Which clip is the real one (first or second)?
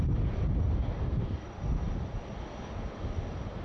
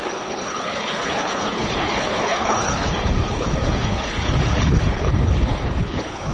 first